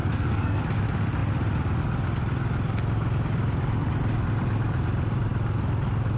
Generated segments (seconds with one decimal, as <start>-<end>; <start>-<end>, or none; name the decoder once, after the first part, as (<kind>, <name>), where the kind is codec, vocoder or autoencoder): 0.0-0.6 (codec, SNAC)